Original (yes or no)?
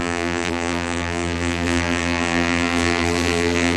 no